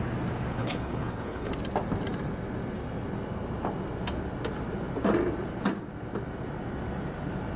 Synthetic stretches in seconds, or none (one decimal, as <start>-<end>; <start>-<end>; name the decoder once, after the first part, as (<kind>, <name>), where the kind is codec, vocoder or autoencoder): 0.5-1.5 (codec, HILCodec)